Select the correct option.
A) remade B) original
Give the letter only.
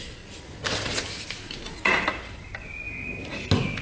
B